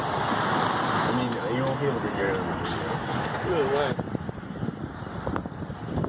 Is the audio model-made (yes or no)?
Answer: no